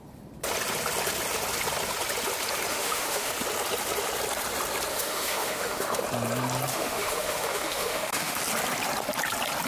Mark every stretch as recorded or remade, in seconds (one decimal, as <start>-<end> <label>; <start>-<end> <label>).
0.0-2.7 recorded; 2.7-3.3 remade; 3.3-4.9 recorded; 4.9-6.0 remade; 6.0-6.7 recorded; 6.7-8.4 remade; 8.4-9.7 recorded

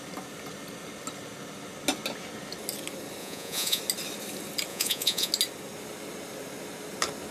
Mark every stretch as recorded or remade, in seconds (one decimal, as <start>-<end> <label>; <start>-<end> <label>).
0.0-3.2 recorded; 3.2-3.8 remade; 3.8-4.7 recorded; 4.7-5.3 remade; 5.3-7.3 recorded

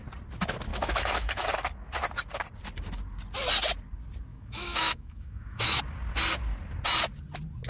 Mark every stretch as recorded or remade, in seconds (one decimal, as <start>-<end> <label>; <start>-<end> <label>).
0.0-0.7 recorded; 0.7-1.3 remade; 1.3-4.3 recorded; 4.3-5.8 remade; 5.8-7.7 recorded

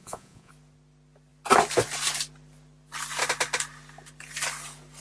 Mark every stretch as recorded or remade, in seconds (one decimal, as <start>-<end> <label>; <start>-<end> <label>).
0.0-0.5 remade; 0.5-5.0 recorded

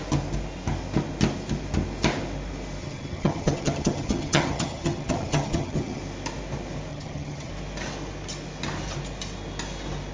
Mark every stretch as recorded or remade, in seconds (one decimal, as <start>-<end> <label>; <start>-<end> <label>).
0.0-2.8 recorded; 2.8-6.0 remade; 6.0-6.9 recorded; 6.9-7.5 remade; 7.5-10.1 recorded

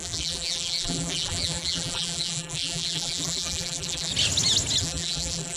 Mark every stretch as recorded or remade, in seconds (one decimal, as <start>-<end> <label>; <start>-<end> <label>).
0.0-4.1 remade; 4.1-4.8 recorded; 4.8-5.6 remade

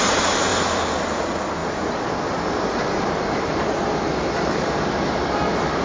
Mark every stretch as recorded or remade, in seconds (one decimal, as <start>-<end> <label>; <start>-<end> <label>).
0.0-0.5 recorded; 0.5-1.2 remade; 1.2-1.6 recorded; 1.6-3.8 remade; 3.8-5.8 recorded